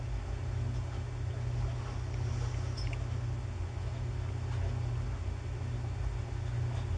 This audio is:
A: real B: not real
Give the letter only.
A